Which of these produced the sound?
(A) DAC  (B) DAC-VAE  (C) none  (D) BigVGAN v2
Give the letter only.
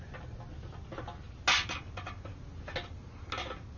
C